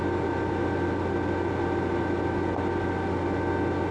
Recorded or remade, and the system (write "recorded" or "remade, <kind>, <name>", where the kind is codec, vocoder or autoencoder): recorded